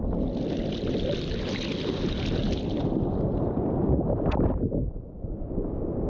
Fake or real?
real